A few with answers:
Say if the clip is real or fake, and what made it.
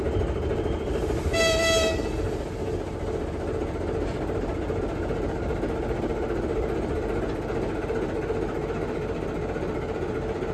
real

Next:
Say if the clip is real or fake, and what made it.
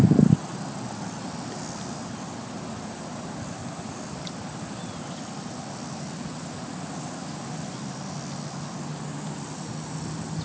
real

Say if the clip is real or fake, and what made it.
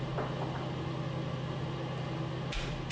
real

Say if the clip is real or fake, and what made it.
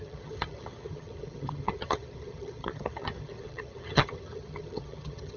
fake, vocoder, HiFi-GAN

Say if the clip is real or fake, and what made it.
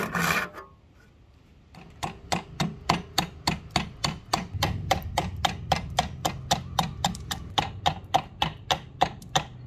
real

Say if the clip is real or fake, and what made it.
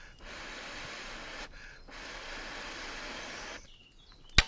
real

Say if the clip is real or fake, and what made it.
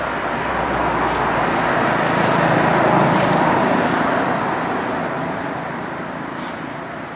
real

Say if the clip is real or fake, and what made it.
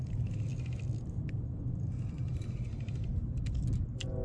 real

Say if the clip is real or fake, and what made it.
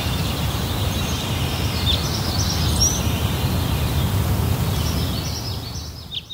real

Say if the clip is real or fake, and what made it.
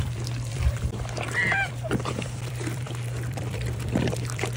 fake, vocoder, BigVGAN v2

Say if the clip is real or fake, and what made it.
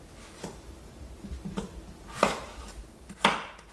real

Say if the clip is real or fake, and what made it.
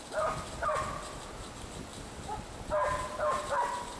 real